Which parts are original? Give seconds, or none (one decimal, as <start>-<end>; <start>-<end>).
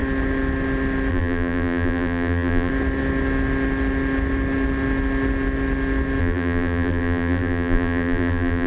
0.0-1.1; 2.7-6.2